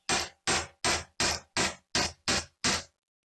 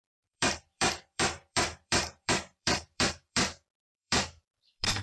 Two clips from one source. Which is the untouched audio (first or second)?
first